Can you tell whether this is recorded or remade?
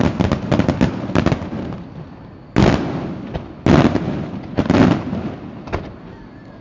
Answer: recorded